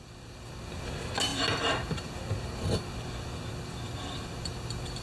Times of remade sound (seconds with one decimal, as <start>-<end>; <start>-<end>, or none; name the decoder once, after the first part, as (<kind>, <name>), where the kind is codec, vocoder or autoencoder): none